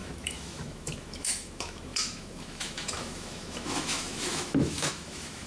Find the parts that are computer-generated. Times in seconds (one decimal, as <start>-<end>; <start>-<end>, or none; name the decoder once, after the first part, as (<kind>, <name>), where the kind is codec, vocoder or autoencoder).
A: 0.0-5.5 (autoencoder, DAC-VAE)